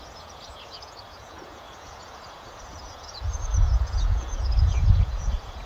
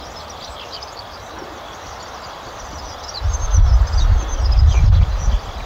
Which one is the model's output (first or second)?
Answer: first